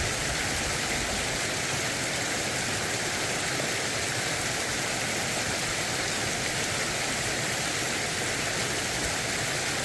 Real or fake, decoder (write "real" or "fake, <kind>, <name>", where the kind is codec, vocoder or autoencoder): real